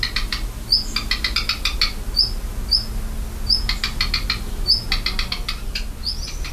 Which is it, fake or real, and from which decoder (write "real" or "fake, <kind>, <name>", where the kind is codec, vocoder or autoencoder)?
real